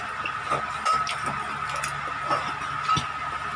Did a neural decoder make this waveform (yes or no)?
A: no